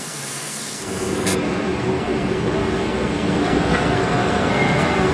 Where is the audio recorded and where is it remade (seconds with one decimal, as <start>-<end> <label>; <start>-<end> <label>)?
0.0-5.1 remade